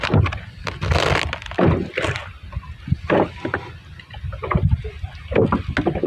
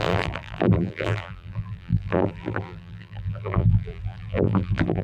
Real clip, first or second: first